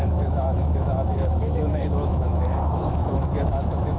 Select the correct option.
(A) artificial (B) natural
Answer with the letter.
A